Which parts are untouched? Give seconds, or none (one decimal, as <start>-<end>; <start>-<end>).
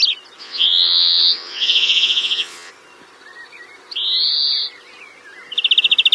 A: 0.0-0.4; 2.7-6.1